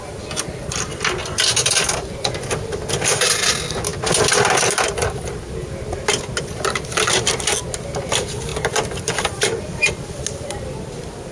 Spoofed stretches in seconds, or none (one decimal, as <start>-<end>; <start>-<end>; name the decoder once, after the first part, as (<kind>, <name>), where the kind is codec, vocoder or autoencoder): none